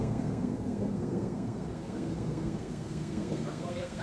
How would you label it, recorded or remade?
remade